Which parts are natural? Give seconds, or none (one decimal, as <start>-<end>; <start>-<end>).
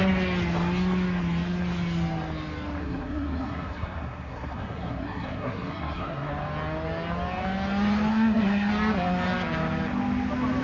0.0-2.8; 6.3-8.1; 8.7-10.6